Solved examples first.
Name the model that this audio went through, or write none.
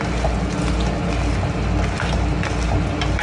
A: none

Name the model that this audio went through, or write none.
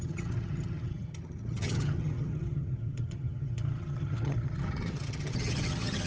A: vocoder, HiFi-GAN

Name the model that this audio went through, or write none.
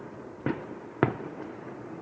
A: none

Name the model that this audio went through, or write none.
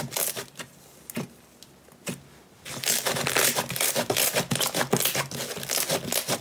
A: none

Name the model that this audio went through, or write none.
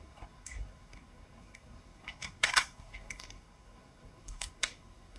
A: codec, SNAC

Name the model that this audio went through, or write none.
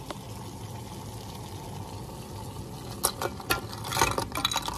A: none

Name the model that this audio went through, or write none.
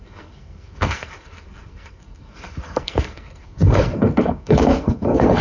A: codec, SNAC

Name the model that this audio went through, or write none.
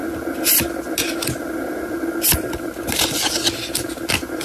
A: none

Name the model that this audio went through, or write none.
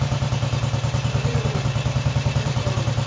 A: vocoder, BigVGAN v2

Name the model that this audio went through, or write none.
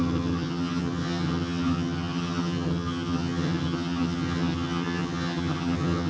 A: vocoder, HiFi-GAN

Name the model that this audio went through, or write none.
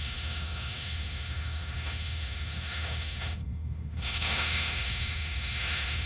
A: autoencoder, DAC-VAE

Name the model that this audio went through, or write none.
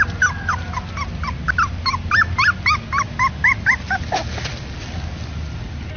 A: none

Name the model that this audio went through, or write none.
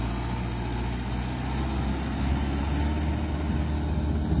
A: none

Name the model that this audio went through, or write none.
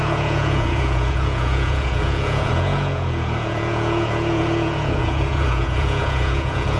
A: vocoder, Vocos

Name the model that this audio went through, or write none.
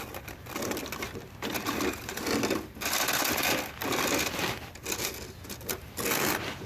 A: none